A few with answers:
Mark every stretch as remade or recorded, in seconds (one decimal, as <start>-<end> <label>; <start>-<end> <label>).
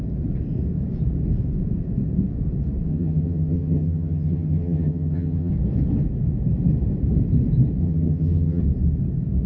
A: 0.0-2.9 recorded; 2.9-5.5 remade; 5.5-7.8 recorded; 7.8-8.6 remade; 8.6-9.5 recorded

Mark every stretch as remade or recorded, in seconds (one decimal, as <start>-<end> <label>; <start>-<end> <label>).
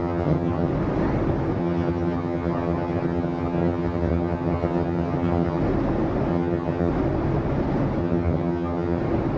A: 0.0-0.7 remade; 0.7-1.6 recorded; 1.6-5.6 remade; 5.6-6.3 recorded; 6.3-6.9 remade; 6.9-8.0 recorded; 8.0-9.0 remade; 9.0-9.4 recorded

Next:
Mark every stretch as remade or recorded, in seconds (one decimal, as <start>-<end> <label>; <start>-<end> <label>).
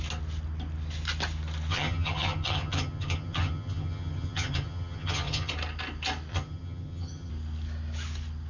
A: 0.0-1.7 recorded; 1.7-5.5 remade; 5.5-6.3 recorded; 6.3-7.3 remade; 7.3-8.5 recorded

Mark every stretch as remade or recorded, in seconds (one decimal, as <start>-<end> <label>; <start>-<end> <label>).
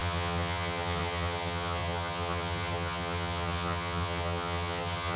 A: 0.0-5.2 remade